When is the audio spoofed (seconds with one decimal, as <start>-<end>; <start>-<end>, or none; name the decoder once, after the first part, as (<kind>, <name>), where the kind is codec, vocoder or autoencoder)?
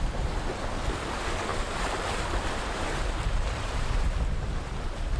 none